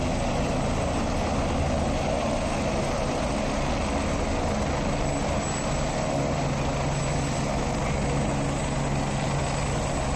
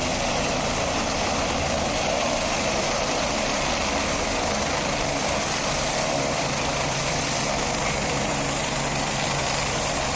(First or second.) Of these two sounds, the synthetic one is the second